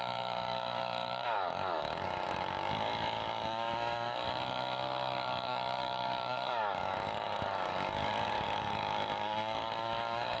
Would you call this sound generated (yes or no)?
yes